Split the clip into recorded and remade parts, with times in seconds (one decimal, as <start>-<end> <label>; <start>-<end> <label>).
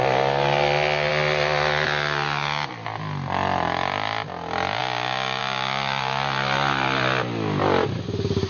0.0-8.5 recorded